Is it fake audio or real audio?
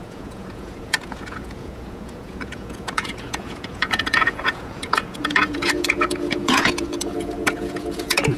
fake